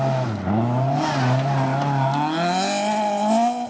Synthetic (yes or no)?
no